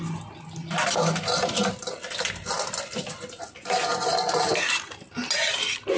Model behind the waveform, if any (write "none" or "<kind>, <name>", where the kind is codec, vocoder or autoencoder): none